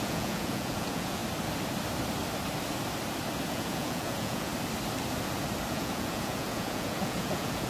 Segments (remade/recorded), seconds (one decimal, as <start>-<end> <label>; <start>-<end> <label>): 0.0-1.2 remade; 1.2-3.5 recorded; 3.5-4.5 remade; 4.5-5.7 recorded; 5.7-7.7 remade